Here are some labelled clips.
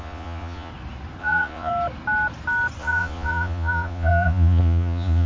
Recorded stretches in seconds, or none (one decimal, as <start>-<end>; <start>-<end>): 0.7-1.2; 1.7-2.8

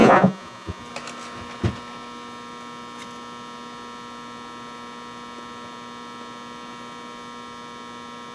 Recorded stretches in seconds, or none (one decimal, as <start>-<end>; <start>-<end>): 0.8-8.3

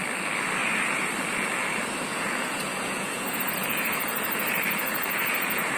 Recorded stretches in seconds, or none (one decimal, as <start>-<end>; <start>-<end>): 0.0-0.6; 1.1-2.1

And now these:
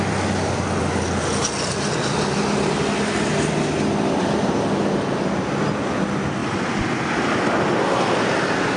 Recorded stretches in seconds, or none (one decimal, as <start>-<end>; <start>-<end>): 0.0-8.8

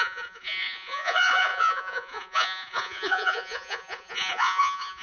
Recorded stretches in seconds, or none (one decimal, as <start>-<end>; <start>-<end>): none